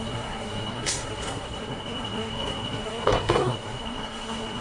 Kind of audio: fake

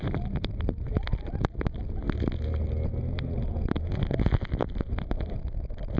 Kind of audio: real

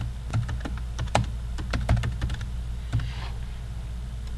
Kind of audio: real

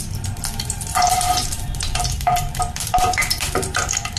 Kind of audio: fake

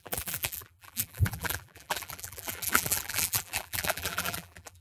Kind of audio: fake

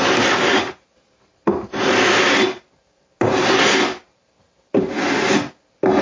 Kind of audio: real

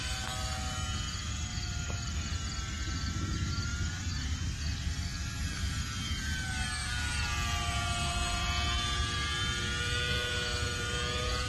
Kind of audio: real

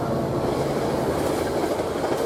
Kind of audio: real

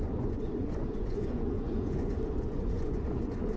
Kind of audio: fake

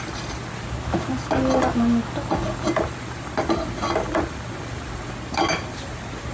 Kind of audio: real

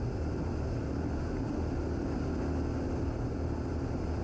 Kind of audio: real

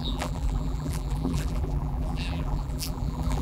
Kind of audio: fake